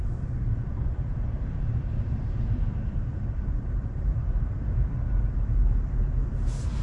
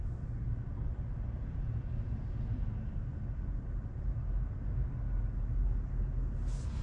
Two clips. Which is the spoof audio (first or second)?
first